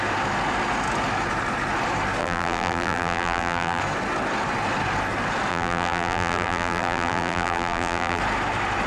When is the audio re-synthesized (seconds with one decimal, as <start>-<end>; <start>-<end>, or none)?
2.2-3.8; 5.5-8.2